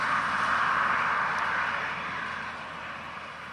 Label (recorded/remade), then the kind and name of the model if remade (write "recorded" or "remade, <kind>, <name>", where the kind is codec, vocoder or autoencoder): recorded